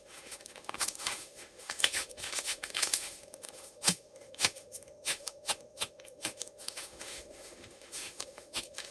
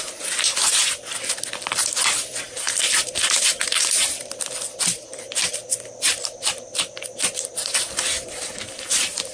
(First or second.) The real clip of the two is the second